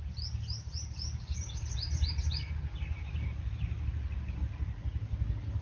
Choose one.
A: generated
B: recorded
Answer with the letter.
B